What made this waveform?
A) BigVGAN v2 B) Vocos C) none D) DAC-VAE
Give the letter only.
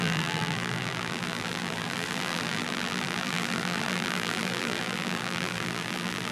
A